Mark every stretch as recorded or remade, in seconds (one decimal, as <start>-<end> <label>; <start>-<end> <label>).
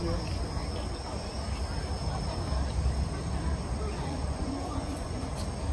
0.0-3.9 recorded; 3.9-5.3 remade; 5.3-5.7 recorded